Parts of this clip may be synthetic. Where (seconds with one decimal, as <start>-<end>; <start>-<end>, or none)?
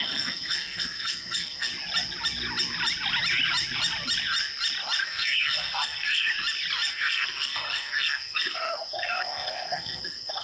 0.0-1.7; 5.0-6.3; 6.9-10.4